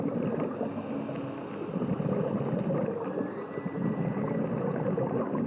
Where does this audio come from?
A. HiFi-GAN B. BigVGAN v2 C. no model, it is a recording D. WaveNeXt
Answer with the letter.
C